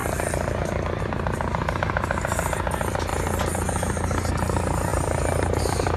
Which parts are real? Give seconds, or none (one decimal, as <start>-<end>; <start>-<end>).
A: 0.0-1.0; 3.1-4.3